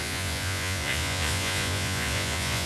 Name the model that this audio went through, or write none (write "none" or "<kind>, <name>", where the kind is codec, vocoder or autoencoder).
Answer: vocoder, Vocos